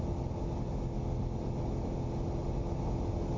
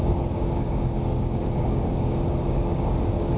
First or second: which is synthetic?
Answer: second